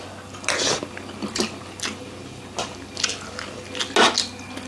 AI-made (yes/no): no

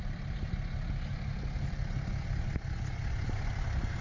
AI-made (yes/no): no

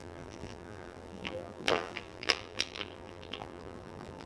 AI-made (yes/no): yes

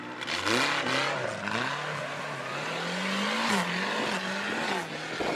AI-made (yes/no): no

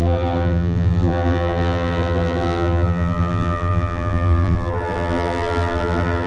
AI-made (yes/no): yes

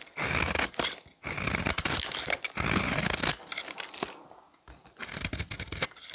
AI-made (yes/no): no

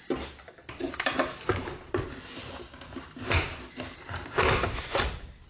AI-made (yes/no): no